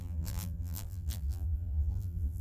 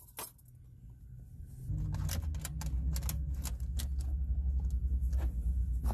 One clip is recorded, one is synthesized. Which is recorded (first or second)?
second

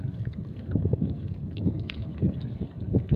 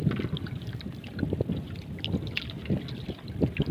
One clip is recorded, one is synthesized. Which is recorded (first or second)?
second